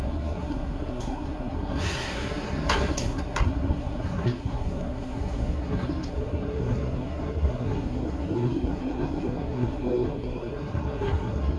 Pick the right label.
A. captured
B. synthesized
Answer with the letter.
B